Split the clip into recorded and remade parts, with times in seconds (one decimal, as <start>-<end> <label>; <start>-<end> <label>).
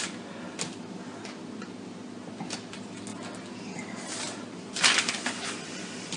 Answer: 0.0-6.2 recorded